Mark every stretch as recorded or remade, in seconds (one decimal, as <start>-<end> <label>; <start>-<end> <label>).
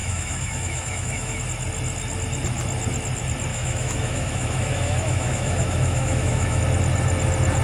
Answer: 0.0-1.4 remade; 1.4-3.5 recorded; 3.5-6.6 remade; 6.6-7.6 recorded